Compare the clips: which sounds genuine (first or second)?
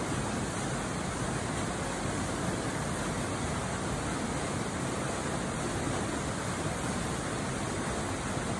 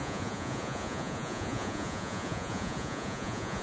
first